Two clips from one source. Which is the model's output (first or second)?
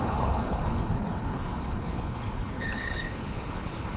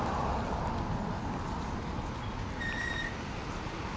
first